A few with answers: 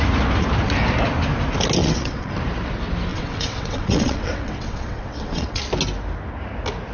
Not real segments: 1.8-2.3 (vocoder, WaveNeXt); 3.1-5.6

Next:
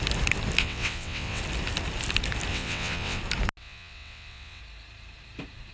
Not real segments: 0.6-1.4 (vocoder, WaveNeXt); 2.5-3.2; 3.6-4.6

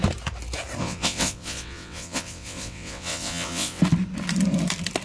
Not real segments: 0.8-3.8 (vocoder, WaveNeXt)

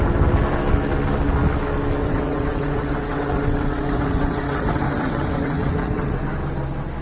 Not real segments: 2.0-6.2 (vocoder, WaveNeXt)